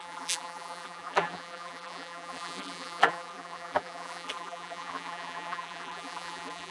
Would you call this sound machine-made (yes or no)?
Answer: yes